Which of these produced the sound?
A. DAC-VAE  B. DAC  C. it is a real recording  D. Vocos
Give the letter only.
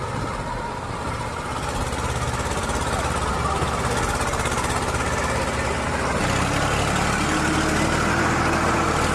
C